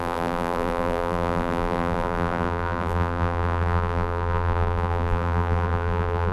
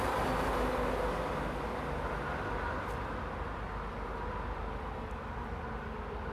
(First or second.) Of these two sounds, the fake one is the first